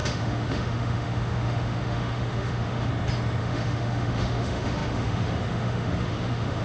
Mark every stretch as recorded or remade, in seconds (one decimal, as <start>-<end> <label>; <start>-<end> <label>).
0.0-2.9 remade; 2.9-3.4 recorded; 3.4-6.6 remade